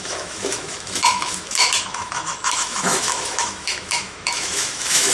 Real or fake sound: fake